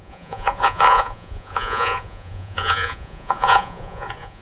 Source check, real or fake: fake